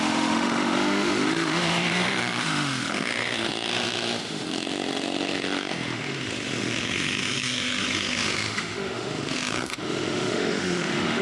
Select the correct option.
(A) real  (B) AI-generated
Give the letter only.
B